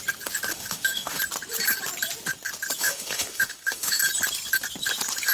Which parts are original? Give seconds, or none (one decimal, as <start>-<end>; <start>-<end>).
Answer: 0.0-0.5; 1.2-2.8; 4.0-5.3